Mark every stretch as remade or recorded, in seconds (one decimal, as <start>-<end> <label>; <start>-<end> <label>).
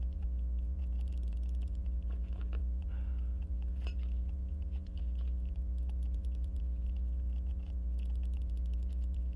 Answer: 0.0-9.4 remade